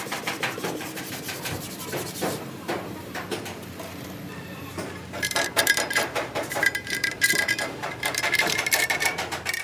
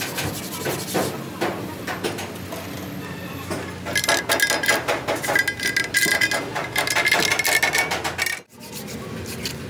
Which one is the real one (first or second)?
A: second